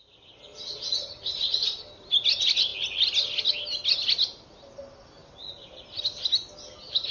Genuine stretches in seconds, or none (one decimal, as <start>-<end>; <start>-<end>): 0.0-7.1